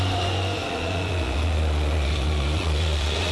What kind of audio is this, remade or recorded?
remade